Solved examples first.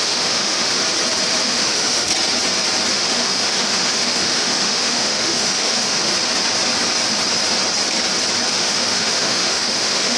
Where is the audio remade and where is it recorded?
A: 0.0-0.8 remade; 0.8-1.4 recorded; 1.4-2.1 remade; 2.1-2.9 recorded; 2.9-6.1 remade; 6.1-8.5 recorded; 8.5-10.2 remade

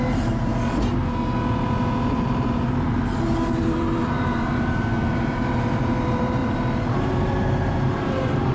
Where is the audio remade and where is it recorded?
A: 0.0-0.5 remade; 0.5-2.1 recorded; 2.1-6.4 remade; 6.4-7.0 recorded; 7.0-8.5 remade

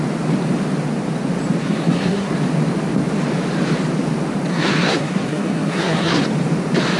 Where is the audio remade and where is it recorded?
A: 0.0-1.6 recorded; 1.6-2.3 remade; 2.3-4.5 recorded; 4.5-6.2 remade; 6.2-7.0 recorded

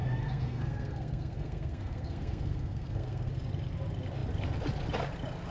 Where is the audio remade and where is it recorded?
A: 0.0-3.3 remade; 3.3-5.5 recorded

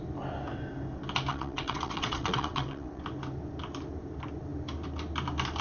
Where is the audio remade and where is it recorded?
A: 0.0-1.3 recorded; 1.3-3.0 remade; 3.0-5.6 recorded

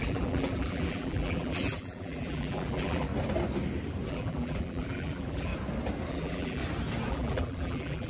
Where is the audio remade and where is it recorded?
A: 0.0-3.1 remade; 3.1-4.1 recorded; 4.1-5.5 remade; 5.5-6.1 recorded; 6.1-6.6 remade; 6.6-7.1 recorded; 7.1-8.1 remade

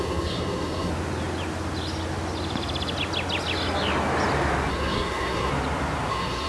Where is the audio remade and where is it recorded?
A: 0.0-0.9 remade; 0.9-4.7 recorded; 4.7-5.5 remade; 5.5-6.1 recorded; 6.1-6.5 remade

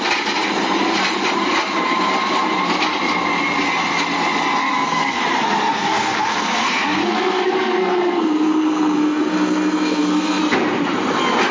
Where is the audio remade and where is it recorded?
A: 0.0-4.6 recorded; 4.6-5.2 remade; 5.2-5.7 recorded; 5.7-10.4 remade; 10.4-11.5 recorded